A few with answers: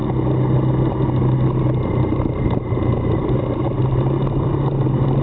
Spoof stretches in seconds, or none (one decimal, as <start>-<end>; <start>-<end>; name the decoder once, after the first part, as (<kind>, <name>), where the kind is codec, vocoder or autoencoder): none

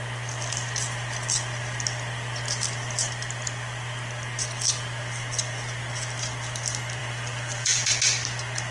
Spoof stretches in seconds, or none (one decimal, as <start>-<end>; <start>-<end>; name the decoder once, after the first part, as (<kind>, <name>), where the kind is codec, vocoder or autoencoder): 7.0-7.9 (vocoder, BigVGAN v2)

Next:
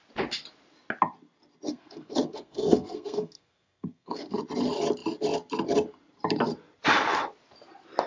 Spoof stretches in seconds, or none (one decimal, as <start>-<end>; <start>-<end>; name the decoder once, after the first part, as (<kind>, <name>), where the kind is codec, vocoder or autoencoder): 1.7-4.4 (codec, SNAC)